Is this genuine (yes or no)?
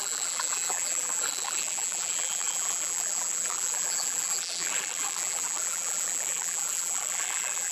no